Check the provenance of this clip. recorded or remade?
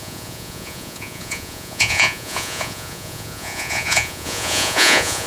remade